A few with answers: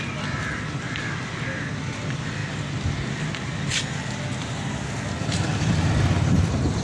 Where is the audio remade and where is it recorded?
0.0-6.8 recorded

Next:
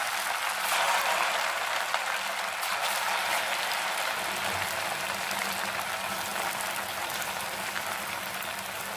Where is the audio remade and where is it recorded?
0.0-9.0 remade